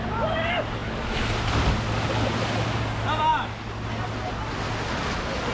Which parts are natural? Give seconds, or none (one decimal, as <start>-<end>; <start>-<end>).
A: 0.0-5.5